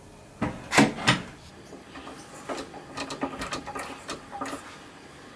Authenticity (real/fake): real